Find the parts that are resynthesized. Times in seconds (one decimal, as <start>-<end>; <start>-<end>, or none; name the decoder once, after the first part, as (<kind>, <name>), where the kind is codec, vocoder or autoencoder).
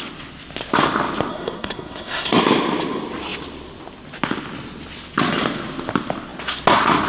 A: 1.3-2.4 (codec, SNAC)